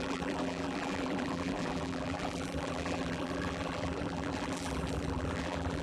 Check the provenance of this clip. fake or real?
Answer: fake